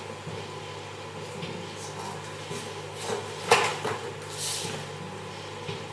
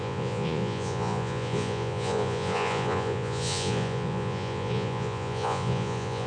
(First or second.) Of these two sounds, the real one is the first